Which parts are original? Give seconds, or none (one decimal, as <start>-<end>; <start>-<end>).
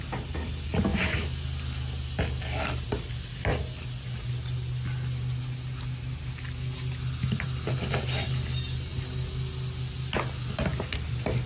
0.0-10.7